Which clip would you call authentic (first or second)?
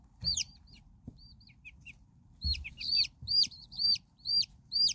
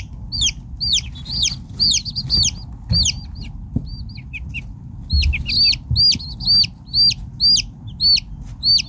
second